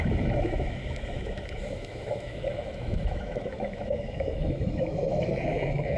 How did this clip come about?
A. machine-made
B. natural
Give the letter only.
A